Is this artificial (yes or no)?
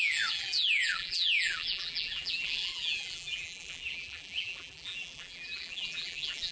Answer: yes